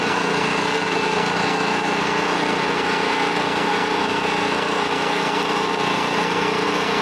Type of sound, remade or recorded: remade